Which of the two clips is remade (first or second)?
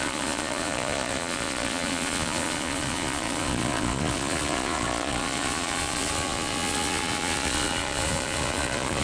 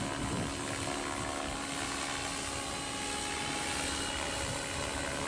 first